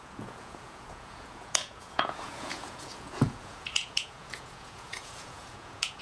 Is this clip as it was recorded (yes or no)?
no